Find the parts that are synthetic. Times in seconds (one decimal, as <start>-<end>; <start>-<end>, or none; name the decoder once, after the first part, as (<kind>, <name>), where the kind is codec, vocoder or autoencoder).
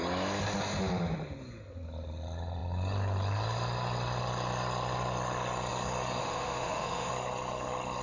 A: 6.2-7.1 (autoencoder, DAC-VAE)